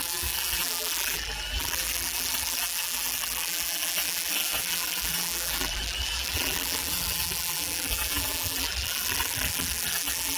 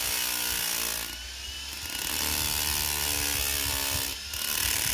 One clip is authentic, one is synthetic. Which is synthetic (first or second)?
first